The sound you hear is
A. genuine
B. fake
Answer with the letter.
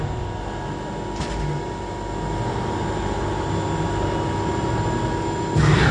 A